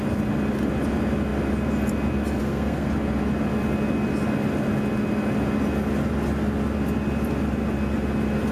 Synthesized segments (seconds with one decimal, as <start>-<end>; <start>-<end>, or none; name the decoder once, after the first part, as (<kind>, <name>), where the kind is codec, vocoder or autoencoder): 2.4-2.9 (codec, SNAC)